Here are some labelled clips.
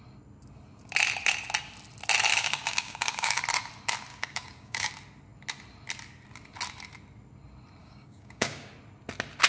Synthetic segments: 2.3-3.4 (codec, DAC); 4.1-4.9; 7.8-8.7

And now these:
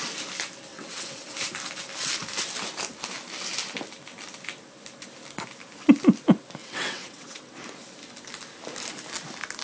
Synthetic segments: 0.7-1.3 (vocoder, WaveNeXt); 6.6-7.6

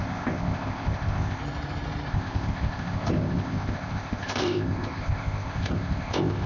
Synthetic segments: 0.0-1.4 (codec, ZipCodec); 2.1-6.5

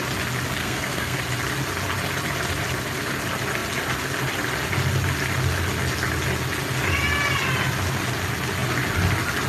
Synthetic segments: 0.6-1.2 (codec, SNAC)

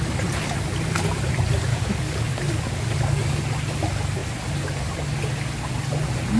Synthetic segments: 1.7-3.4 (codec, DAC)

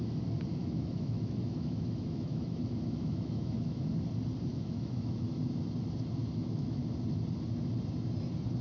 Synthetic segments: 0.6-3.9 (autoencoder, DAC-VAE); 4.5-5.4; 6.2-6.8